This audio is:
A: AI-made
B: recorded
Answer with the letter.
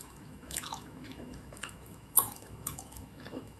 A